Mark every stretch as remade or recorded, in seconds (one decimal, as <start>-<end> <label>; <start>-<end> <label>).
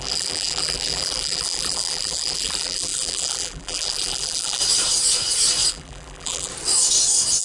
0.0-4.6 remade; 4.6-5.7 recorded; 5.7-6.5 remade; 6.5-7.4 recorded